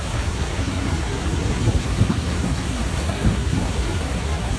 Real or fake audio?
fake